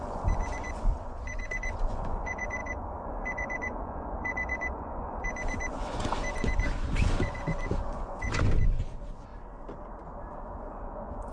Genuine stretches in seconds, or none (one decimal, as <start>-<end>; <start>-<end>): 9.3-10.4